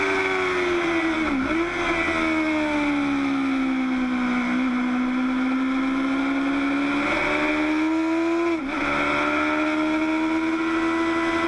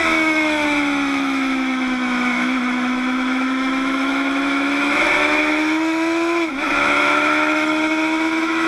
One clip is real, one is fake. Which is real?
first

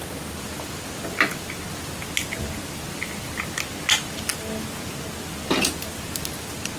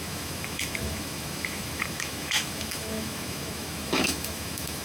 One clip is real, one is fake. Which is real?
first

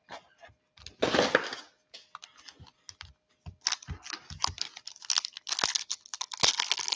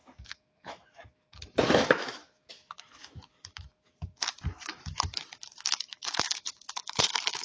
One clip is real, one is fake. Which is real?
first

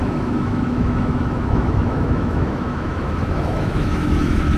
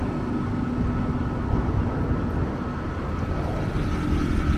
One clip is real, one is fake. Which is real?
second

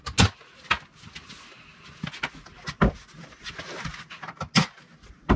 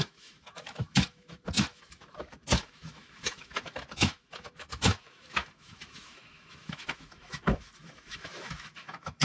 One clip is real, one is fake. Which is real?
first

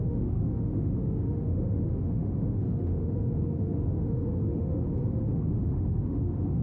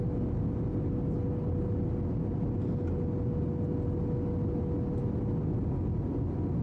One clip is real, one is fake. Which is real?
second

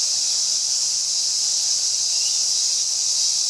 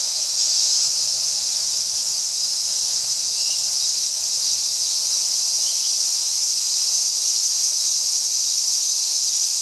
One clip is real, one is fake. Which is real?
first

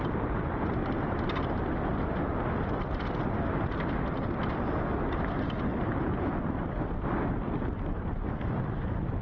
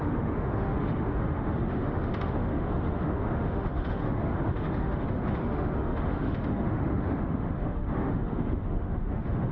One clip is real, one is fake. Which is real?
first